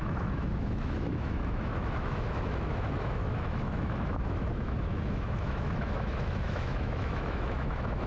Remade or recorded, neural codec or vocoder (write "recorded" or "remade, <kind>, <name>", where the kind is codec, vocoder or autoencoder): remade, autoencoder, DAC-VAE